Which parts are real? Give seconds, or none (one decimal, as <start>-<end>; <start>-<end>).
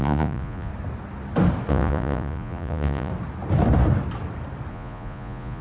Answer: 0.7-1.7; 3.1-4.7